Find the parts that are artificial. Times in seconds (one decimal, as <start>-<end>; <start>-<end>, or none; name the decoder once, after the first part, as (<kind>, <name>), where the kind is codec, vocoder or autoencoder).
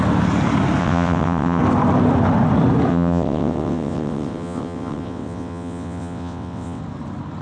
0.8-1.6 (vocoder, WaveNeXt); 2.9-6.8